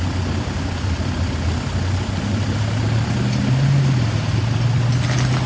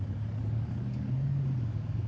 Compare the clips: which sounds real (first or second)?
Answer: first